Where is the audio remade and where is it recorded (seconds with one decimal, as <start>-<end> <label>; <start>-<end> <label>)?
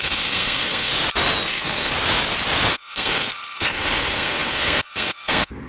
0.0-0.9 remade; 0.9-1.5 recorded; 1.5-1.9 remade; 1.9-2.7 recorded; 2.7-5.7 remade